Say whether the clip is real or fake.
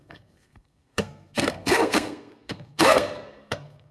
fake